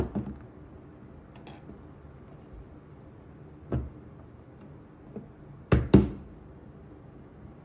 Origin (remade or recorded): recorded